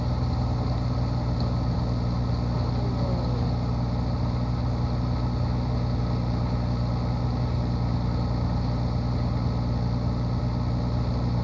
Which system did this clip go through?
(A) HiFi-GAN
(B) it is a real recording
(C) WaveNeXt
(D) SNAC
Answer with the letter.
B